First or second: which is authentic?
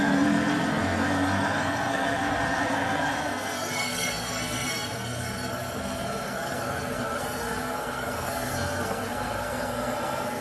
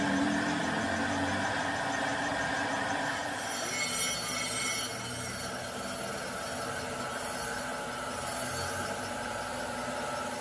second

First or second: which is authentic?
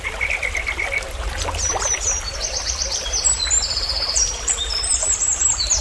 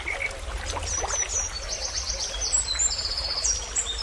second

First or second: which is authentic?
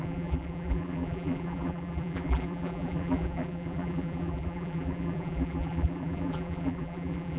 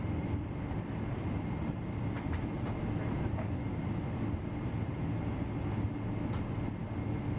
second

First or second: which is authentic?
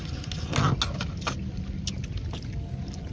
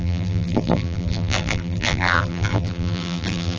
first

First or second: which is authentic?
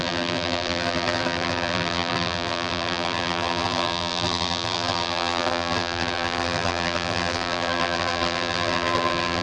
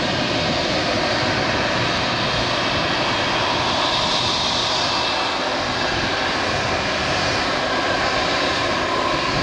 second